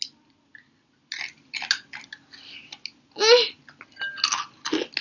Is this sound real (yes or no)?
yes